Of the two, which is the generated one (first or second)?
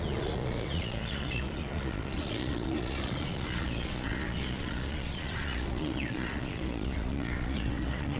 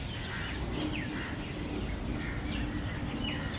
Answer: first